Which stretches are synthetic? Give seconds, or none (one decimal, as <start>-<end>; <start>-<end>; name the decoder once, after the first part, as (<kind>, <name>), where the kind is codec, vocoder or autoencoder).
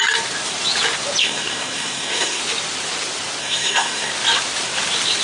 1.2-2.4 (codec, SNAC); 3.4-4.1